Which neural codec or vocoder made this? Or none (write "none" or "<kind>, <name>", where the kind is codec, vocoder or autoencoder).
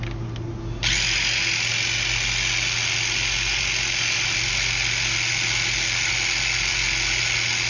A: none